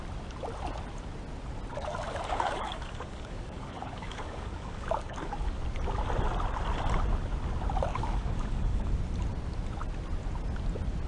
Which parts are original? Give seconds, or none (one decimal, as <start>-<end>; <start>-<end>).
0.0-1.7; 5.6-7.9; 8.9-11.1